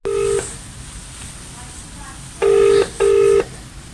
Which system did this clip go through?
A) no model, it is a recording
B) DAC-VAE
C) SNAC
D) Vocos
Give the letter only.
A